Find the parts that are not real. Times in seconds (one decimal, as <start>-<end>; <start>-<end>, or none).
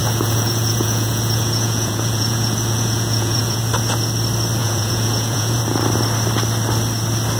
0.0-3.6; 4.6-5.6